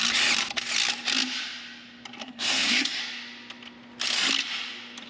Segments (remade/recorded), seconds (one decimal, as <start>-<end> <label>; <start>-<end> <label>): 0.0-2.2 recorded; 2.2-3.0 remade; 3.0-5.1 recorded